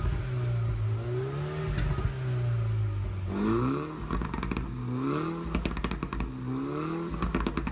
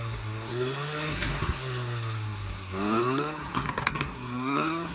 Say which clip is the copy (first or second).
second